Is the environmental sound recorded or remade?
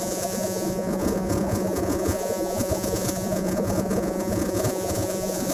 remade